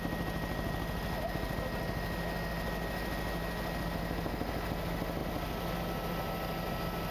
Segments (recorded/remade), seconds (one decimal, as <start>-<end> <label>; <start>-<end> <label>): 0.0-7.1 recorded